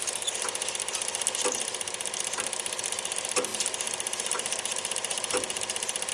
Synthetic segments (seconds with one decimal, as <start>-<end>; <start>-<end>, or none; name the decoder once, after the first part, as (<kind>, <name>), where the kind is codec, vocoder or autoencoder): 3.5-6.1 (vocoder, BigVGAN v2)